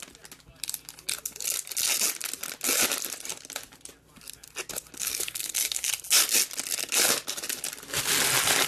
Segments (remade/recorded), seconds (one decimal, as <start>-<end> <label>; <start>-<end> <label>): 0.0-5.0 recorded; 5.0-5.9 remade; 5.9-8.7 recorded